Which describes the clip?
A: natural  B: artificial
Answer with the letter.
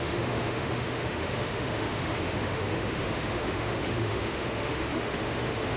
B